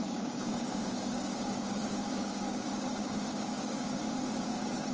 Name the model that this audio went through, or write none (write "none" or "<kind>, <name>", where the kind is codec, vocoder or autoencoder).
codec, DAC